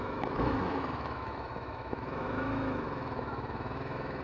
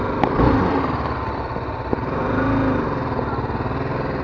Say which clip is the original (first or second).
second